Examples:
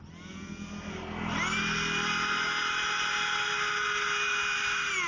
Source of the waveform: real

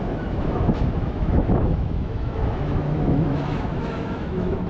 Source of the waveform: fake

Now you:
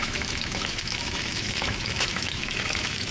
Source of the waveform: fake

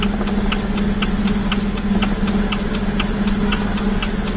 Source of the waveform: real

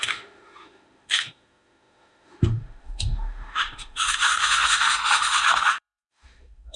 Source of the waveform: fake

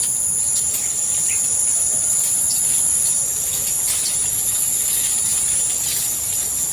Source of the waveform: real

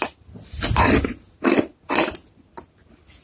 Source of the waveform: real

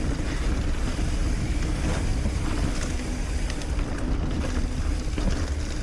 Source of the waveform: real